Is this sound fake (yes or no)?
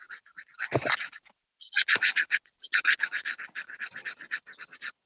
no